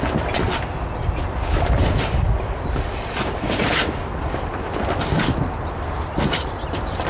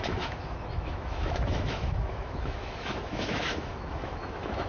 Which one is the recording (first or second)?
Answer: first